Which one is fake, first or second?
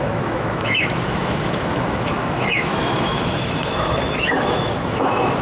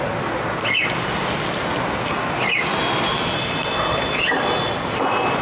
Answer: first